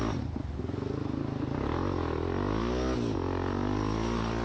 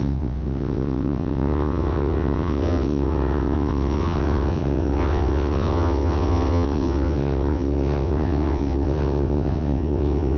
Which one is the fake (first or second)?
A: second